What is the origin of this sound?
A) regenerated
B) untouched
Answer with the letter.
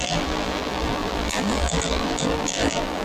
A